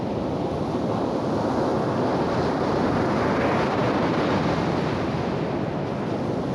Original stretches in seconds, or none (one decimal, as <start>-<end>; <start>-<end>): 0.0-6.5